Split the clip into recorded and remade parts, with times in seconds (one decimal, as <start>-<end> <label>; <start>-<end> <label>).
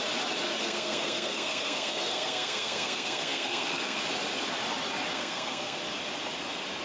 0.0-0.6 recorded; 0.6-4.0 remade; 4.0-5.1 recorded; 5.1-5.8 remade; 5.8-6.8 recorded